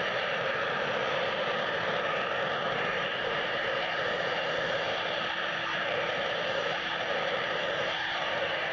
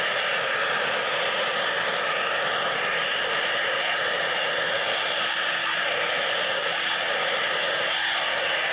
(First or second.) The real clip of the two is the second